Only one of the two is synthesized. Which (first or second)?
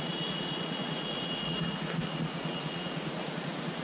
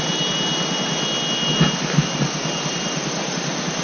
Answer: first